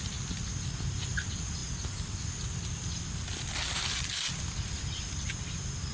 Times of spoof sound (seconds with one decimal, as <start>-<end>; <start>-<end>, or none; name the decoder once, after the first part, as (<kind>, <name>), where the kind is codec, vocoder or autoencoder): none